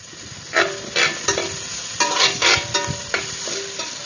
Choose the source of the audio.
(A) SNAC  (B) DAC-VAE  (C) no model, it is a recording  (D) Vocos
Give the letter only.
C